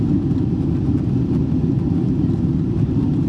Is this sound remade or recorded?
recorded